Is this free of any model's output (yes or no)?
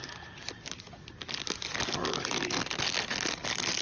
yes